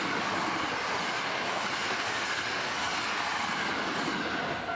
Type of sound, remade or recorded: recorded